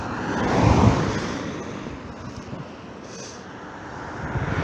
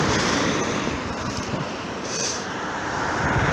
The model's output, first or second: second